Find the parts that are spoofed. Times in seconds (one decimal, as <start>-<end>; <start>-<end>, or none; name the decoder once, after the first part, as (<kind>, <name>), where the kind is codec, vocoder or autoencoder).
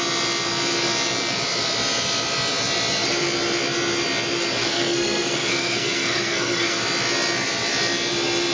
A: 4.6-6.8 (codec, SNAC)